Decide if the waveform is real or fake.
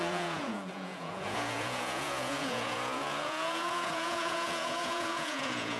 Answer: fake